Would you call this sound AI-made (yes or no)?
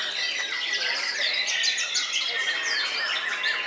no